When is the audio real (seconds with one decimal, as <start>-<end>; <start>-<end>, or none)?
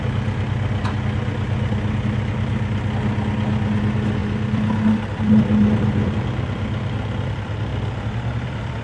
0.0-4.2; 6.2-7.7